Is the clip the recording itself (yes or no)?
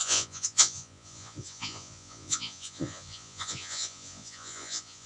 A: no